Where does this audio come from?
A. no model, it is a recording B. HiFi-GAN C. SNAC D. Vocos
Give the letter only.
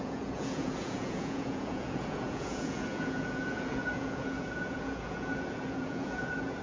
D